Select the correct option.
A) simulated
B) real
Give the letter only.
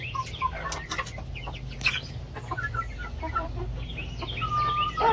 B